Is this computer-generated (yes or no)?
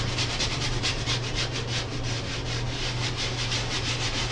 yes